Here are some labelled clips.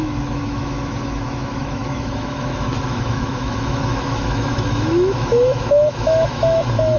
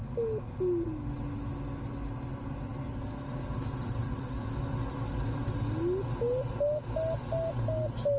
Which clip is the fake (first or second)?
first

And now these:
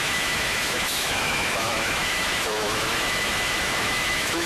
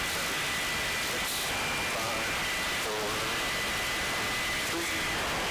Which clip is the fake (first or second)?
first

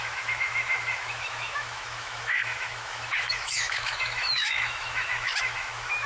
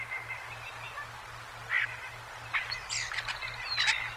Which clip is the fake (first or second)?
first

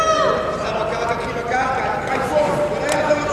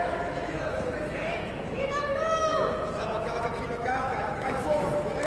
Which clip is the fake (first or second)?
second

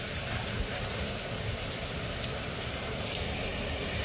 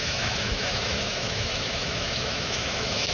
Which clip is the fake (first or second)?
second